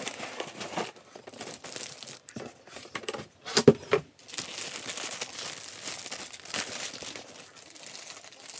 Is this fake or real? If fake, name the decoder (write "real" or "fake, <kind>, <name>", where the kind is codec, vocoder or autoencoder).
real